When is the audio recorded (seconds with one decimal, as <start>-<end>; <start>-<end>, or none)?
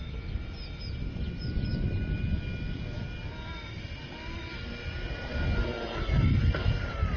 0.0-7.2